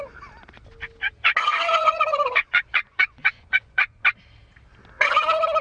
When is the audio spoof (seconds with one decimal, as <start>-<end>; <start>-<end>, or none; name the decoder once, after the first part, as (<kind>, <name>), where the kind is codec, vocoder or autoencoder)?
1.8-4.0 (vocoder, Vocos)